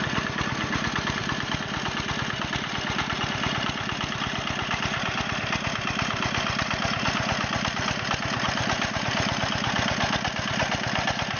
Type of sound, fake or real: real